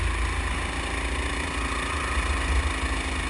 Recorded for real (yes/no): yes